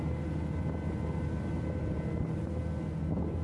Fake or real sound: real